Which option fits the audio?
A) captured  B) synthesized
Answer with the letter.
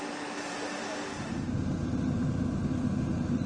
A